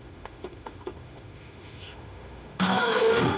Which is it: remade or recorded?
remade